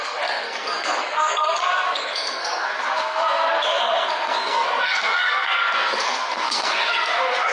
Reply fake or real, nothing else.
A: fake